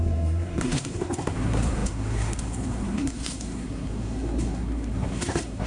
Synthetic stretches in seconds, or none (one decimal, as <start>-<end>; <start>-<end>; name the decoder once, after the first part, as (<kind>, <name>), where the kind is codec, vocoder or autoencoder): 0.0-5.7 (codec, SNAC)